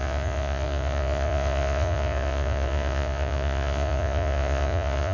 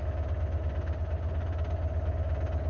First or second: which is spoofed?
first